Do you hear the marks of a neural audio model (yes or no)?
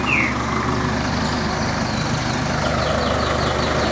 no